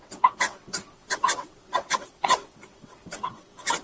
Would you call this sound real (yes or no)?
no